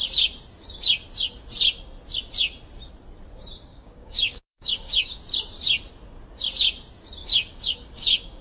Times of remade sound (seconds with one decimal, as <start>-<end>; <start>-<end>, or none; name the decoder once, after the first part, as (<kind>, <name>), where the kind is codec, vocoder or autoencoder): 3.7-5.2 (codec, DAC); 7.2-8.4